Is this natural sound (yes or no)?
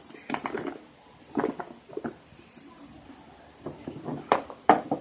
no